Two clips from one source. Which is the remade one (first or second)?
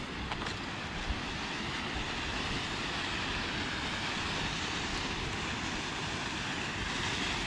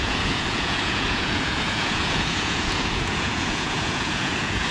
second